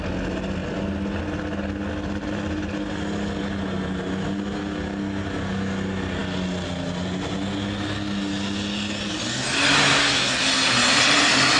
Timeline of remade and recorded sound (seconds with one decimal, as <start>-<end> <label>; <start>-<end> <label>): 0.0-11.6 recorded